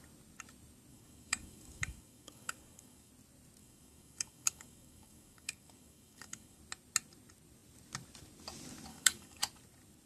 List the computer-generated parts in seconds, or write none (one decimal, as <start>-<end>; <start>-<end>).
0.9-3.1; 3.6-6.6; 8.9-9.4